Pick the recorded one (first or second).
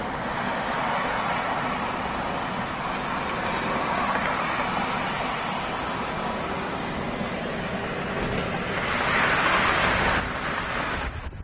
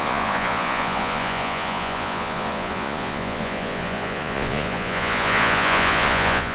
first